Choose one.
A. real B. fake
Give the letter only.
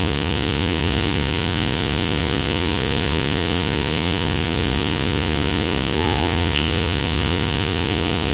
B